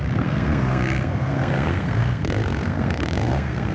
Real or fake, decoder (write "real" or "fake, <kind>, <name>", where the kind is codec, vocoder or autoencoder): fake, codec, SNAC